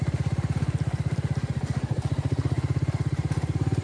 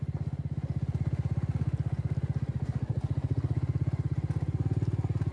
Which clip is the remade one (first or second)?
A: first